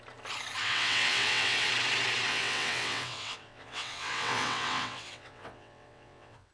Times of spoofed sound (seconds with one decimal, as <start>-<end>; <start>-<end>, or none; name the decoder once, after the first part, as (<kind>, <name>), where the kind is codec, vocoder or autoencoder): 0.6-1.7 (vocoder, WaveNeXt); 2.3-6.5